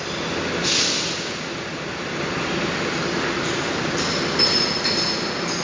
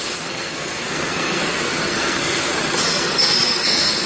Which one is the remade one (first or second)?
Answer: second